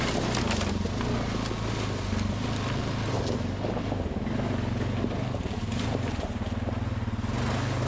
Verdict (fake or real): real